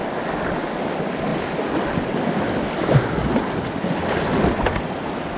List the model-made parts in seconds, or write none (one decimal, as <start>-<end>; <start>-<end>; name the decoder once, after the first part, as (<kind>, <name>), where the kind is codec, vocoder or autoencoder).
none